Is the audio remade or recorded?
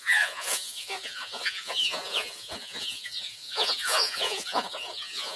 remade